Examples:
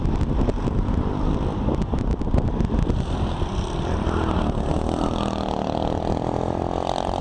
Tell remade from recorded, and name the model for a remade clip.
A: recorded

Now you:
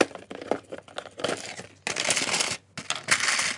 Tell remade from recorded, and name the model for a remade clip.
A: recorded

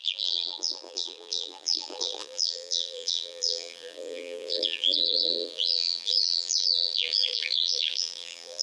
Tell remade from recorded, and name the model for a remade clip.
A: remade, vocoder, BigVGAN v2